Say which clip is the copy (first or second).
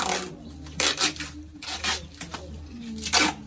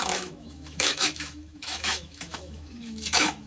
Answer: second